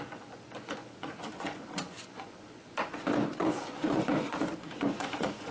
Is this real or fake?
fake